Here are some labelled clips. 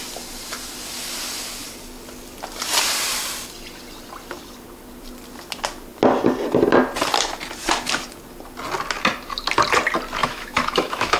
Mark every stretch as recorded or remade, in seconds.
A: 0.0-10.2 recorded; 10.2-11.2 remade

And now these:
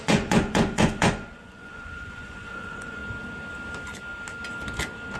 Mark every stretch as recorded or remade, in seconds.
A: 0.0-3.0 remade; 3.0-5.2 recorded

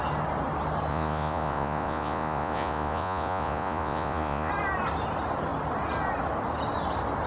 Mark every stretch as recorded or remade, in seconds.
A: 0.0-0.9 recorded; 0.9-4.5 remade; 4.5-7.3 recorded

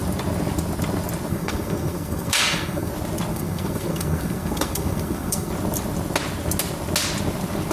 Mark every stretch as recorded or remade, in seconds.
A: 0.0-1.3 recorded; 1.3-2.9 remade; 2.9-3.3 recorded; 3.3-5.5 remade; 5.5-7.7 recorded

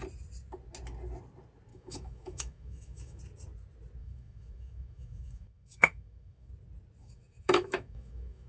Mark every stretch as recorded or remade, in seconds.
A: 0.0-1.7 recorded; 1.7-3.2 remade; 3.2-4.0 recorded; 4.0-6.5 remade; 6.5-7.0 recorded; 7.0-8.5 remade

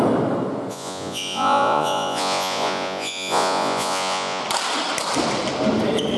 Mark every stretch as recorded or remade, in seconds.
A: 0.0-0.7 recorded; 0.7-4.4 remade; 4.4-6.2 recorded